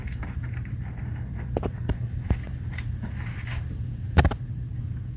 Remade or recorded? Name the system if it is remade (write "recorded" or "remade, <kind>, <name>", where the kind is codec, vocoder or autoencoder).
remade, vocoder, BigVGAN v2